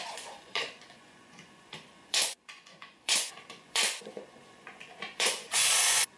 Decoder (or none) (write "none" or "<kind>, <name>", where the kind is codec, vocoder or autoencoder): vocoder, Vocos